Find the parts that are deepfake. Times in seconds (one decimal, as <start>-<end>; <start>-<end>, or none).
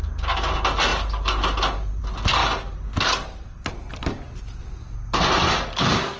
none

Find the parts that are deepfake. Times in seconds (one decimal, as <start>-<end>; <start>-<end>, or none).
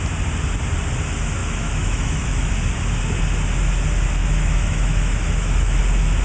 1.4-2.5; 4.2-5.8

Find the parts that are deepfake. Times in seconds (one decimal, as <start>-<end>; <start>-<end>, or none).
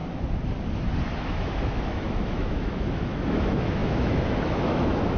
1.2-5.2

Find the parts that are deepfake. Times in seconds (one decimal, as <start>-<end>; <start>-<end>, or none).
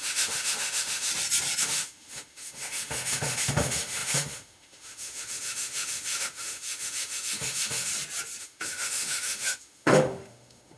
0.0-1.1; 1.6-7.9; 8.4-10.8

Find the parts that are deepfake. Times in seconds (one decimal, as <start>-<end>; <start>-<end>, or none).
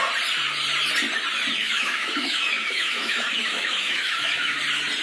1.6-4.6